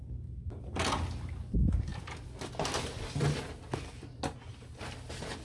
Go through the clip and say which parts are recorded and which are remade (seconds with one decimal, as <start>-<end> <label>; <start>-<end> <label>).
0.0-5.4 recorded